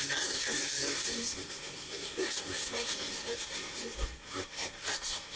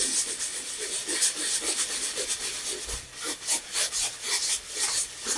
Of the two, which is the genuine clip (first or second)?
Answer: second